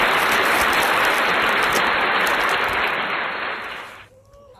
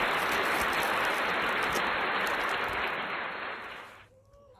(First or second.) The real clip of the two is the second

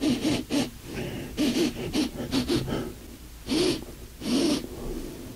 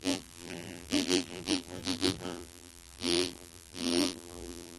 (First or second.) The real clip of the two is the first